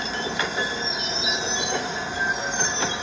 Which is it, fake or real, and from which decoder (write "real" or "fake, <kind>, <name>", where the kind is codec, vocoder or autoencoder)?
real